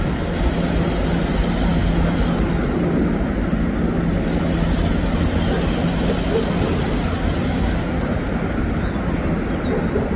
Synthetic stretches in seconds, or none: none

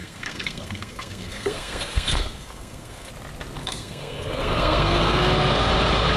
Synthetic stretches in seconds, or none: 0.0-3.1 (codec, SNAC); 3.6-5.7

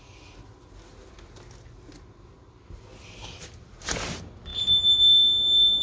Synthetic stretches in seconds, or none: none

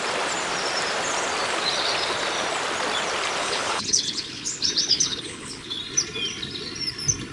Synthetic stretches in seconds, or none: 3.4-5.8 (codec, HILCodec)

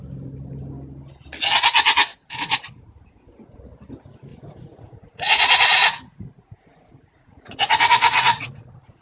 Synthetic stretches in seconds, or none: 2.1-3.7 (vocoder, Vocos); 4.3-9.0

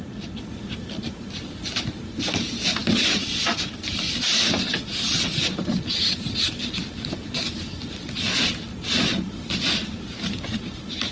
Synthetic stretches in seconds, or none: none